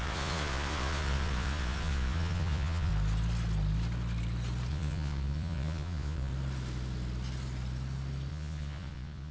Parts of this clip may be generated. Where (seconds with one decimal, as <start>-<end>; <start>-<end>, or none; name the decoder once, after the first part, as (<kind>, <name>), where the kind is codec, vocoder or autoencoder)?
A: 0.0-2.9 (vocoder, Vocos); 4.7-6.3; 8.3-9.3